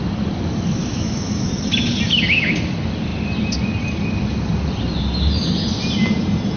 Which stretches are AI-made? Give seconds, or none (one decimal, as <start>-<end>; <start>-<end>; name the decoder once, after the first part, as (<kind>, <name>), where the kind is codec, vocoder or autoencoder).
0.8-1.5 (autoencoder, DAC-VAE)